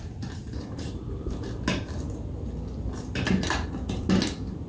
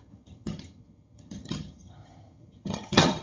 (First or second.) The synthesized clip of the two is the second